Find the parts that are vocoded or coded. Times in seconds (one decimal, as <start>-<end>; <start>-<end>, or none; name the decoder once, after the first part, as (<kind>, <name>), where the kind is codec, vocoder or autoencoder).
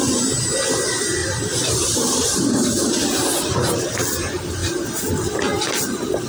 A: 1.2-3.7 (vocoder, BigVGAN v2)